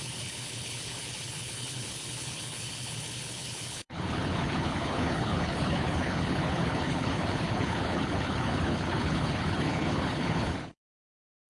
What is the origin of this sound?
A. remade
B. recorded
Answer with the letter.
A